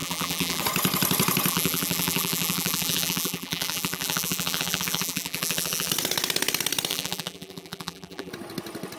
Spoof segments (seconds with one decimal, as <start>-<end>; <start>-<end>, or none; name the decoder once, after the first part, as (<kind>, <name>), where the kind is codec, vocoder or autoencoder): 0.0-0.6 (vocoder, BigVGAN v2); 1.5-5.9; 6.9-8.3